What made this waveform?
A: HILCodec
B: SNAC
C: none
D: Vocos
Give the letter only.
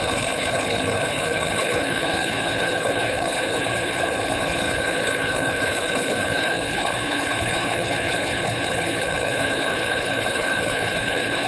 A